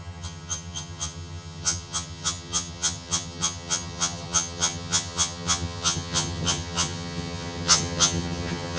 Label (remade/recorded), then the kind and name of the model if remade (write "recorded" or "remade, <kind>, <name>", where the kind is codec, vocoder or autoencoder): remade, vocoder, HiFi-GAN